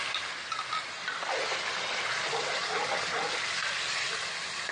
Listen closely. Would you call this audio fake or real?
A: real